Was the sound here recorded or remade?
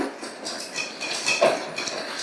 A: remade